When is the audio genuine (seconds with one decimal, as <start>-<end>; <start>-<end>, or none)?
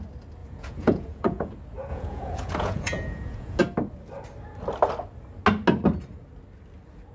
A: 0.0-0.4; 1.5-1.9; 3.6-7.1